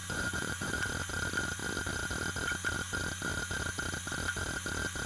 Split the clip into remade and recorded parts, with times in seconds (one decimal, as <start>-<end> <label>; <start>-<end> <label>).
0.0-0.9 remade; 0.9-5.1 recorded